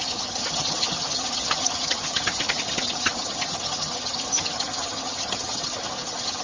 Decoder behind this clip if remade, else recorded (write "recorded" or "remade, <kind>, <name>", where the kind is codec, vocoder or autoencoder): remade, vocoder, HiFi-GAN